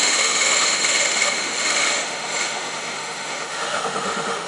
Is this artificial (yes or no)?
yes